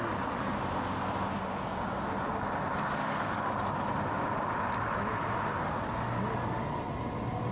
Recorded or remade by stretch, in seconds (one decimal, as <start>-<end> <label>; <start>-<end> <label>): 0.0-3.0 recorded; 3.0-3.5 remade; 3.5-7.5 recorded